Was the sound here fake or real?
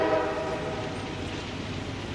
real